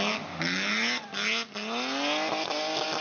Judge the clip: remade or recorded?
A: recorded